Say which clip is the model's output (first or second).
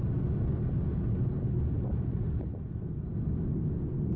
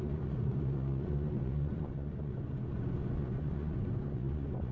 second